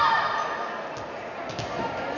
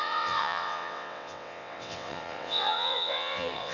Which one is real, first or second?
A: first